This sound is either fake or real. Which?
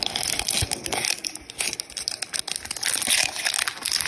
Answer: real